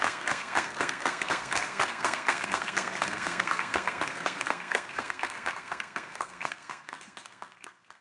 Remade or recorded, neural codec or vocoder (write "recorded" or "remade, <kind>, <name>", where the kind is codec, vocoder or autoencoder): remade, codec, SNAC